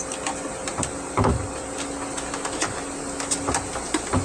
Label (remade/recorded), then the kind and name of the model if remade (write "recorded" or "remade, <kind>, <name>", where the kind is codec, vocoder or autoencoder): recorded